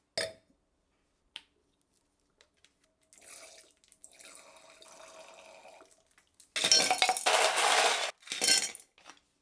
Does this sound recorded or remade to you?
recorded